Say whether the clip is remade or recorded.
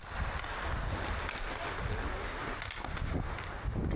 recorded